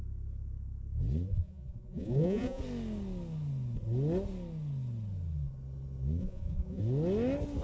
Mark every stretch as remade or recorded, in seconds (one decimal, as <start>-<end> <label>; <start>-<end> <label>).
0.0-1.3 recorded; 1.3-2.6 remade; 2.6-6.2 recorded; 6.2-6.8 remade; 6.8-7.6 recorded